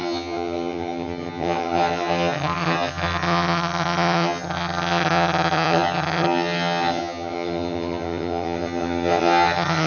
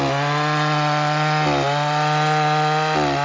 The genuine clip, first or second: second